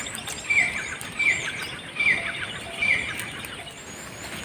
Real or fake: real